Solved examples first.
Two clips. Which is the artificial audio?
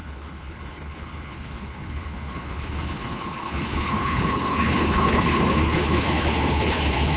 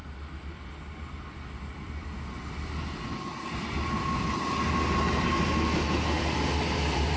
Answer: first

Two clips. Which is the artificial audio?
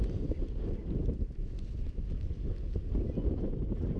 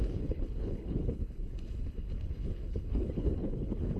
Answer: second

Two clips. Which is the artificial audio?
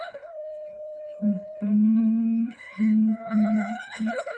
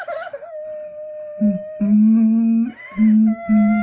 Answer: first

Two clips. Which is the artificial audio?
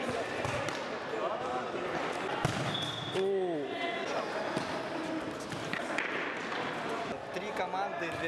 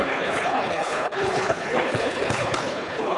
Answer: second